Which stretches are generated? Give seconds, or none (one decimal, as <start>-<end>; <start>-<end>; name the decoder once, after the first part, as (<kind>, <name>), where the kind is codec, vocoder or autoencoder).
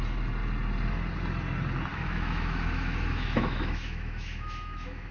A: 1.9-5.1 (autoencoder, DAC-VAE)